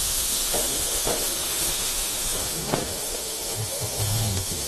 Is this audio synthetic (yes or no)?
yes